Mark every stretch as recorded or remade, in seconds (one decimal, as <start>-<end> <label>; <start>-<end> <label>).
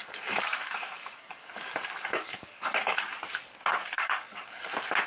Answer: 0.0-3.0 remade; 3.0-3.7 recorded; 3.7-4.6 remade; 4.6-5.1 recorded